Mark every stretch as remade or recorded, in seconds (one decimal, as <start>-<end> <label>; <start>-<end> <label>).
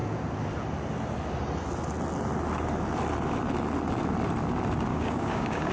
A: 0.0-4.9 recorded; 4.9-5.7 remade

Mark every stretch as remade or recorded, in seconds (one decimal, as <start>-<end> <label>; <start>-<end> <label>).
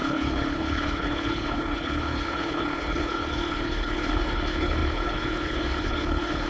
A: 0.0-6.5 remade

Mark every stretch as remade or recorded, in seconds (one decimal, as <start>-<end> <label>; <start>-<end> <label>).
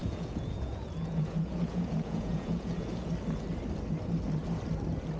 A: 0.0-3.1 remade; 3.1-5.2 recorded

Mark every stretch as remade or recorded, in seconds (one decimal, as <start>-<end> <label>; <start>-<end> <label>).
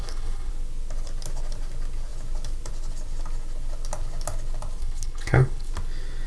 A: 0.0-0.5 remade; 0.5-4.8 recorded; 4.8-5.7 remade; 5.7-6.3 recorded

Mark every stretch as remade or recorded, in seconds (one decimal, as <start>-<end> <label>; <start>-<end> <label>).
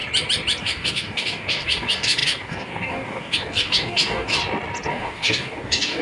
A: 0.0-0.6 recorded; 0.6-4.4 remade; 4.4-4.9 recorded; 4.9-6.0 remade